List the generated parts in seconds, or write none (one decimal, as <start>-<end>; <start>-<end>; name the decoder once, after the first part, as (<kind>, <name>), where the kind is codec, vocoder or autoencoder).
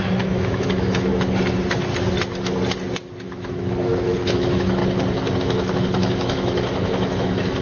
0.0-1.1 (autoencoder, DAC-VAE); 3.2-4.8; 5.4-7.6